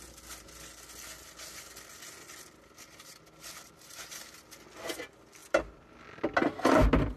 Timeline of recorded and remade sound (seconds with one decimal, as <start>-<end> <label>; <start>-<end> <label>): 0.0-7.2 recorded